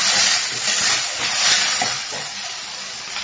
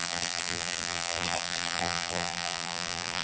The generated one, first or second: second